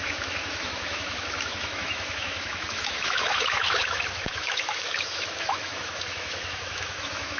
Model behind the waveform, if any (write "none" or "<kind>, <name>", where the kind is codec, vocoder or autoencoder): autoencoder, DAC-VAE